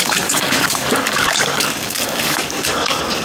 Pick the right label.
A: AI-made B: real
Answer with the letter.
A